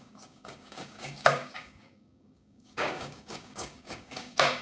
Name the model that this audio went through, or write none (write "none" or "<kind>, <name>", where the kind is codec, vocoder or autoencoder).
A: codec, DAC